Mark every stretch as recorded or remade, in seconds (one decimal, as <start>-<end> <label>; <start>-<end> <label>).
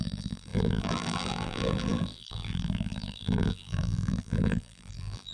0.0-5.3 remade